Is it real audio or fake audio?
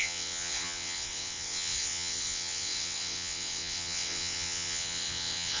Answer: fake